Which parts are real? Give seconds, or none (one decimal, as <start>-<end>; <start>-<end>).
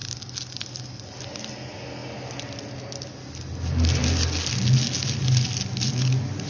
0.8-6.5